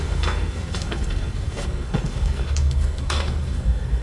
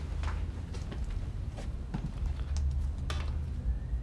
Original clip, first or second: second